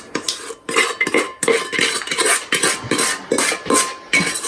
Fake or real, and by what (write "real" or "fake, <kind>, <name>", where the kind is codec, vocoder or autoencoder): real